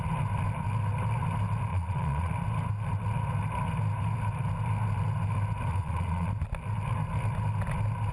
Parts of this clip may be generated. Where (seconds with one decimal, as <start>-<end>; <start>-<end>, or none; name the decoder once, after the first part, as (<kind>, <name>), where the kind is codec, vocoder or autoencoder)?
1.7-2.3 (vocoder, Vocos); 5.7-6.3